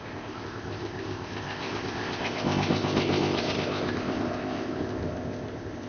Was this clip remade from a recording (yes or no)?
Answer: yes